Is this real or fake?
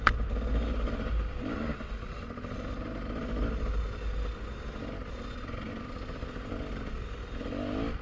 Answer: real